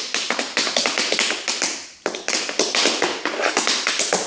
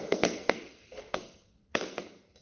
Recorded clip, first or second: first